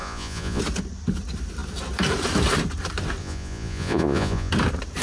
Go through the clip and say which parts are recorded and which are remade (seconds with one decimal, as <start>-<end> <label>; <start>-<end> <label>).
0.0-0.6 remade; 0.6-3.2 recorded; 3.2-4.5 remade; 4.5-5.0 recorded